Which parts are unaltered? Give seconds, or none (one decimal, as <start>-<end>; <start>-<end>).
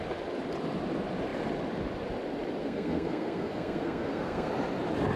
0.0-2.6; 4.5-5.2